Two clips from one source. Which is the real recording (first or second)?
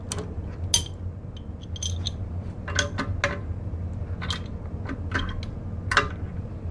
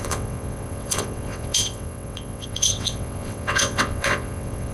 first